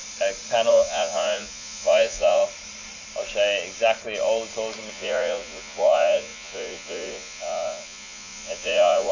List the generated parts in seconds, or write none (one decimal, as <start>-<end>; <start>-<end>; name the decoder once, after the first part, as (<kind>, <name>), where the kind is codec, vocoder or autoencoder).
0.7-2.4 (vocoder, Vocos); 4.9-9.1